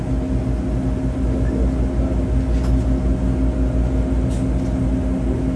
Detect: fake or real real